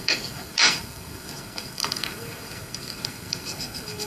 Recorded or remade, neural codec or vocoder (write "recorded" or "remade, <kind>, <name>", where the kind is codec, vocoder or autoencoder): remade, codec, SNAC